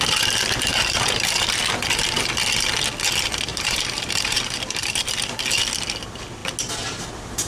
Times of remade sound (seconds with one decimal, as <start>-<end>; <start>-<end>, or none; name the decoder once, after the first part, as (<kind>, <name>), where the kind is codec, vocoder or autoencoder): 0.7-1.6 (vocoder, BigVGAN v2); 3.5-5.0